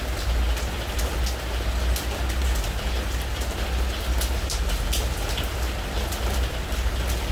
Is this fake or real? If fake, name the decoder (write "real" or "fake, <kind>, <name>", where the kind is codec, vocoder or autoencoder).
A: real